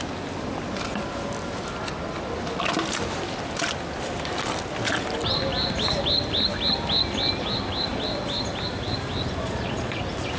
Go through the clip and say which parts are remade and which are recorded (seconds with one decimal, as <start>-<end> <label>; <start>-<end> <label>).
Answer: 0.0-9.4 recorded; 9.4-10.0 remade; 10.0-10.4 recorded